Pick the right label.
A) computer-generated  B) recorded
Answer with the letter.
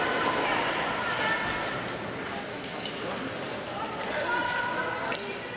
B